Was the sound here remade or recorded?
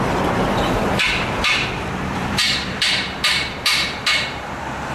remade